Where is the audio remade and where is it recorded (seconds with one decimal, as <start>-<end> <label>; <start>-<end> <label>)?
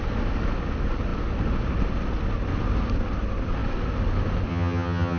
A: 0.0-4.5 recorded; 4.5-5.2 remade